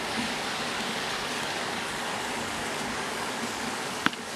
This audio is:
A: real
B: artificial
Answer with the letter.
B